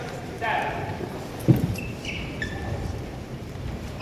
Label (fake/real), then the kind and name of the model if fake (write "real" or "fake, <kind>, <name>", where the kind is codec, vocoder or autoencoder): fake, vocoder, BigVGAN v2